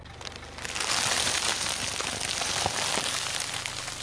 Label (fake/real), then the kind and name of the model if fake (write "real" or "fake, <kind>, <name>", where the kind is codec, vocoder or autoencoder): real